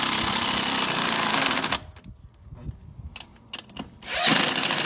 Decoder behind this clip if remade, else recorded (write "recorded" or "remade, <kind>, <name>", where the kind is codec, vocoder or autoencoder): recorded